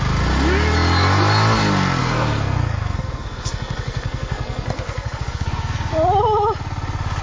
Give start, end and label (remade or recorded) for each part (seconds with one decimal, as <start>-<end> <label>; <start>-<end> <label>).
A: 0.0-2.0 recorded; 2.0-5.9 remade; 5.9-7.2 recorded